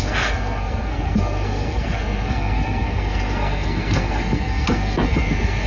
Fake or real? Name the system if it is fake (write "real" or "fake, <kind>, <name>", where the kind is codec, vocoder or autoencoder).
fake, codec, SNAC